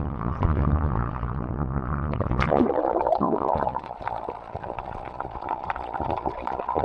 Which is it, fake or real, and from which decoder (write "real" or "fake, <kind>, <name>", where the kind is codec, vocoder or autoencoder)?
fake, vocoder, Vocos